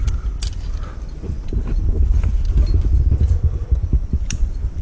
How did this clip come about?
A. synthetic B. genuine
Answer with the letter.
B